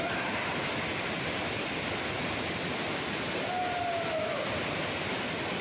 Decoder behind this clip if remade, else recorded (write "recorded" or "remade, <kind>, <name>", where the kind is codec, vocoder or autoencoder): recorded